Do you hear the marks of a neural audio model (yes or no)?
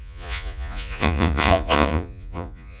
yes